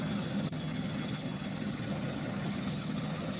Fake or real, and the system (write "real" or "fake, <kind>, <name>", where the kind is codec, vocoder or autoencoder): fake, vocoder, HiFi-GAN